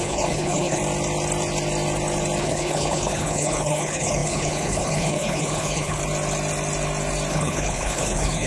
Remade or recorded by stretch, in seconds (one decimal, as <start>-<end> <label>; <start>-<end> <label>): 0.0-0.8 remade; 0.8-2.4 recorded; 2.4-6.0 remade; 6.0-7.3 recorded; 7.3-8.5 remade

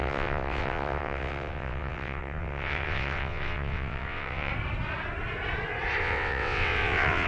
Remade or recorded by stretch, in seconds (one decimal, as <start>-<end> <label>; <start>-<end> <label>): 0.0-4.5 remade; 4.5-6.0 recorded; 6.0-7.3 remade